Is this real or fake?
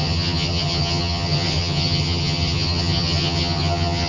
fake